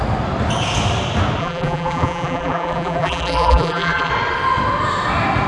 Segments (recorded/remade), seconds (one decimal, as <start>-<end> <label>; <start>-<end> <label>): 0.0-1.4 recorded; 1.4-4.1 remade; 4.1-5.5 recorded